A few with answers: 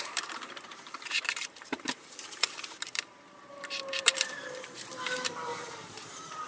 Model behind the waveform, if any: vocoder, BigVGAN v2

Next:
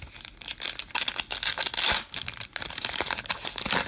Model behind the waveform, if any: none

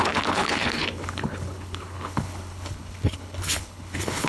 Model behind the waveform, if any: codec, HILCodec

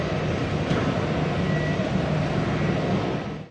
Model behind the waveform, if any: none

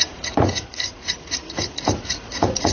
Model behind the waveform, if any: vocoder, Vocos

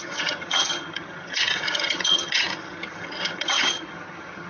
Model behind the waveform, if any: vocoder, HiFi-GAN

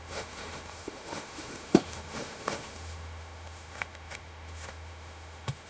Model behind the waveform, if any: autoencoder, DAC-VAE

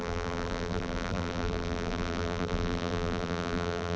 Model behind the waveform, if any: vocoder, BigVGAN v2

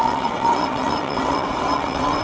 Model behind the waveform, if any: vocoder, WaveNeXt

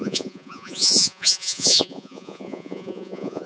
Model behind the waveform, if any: vocoder, Vocos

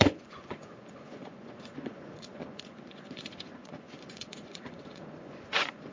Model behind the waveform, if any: vocoder, Vocos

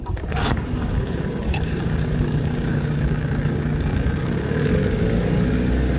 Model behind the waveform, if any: codec, DAC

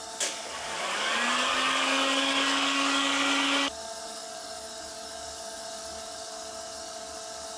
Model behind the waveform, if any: codec, DAC